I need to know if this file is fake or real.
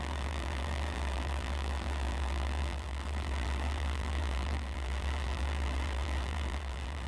fake